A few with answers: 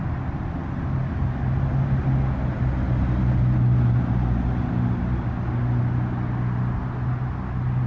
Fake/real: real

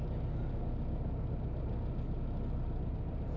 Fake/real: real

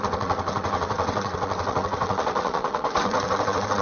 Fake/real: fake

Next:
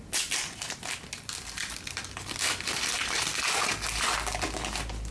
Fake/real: real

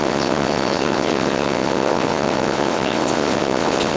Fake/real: fake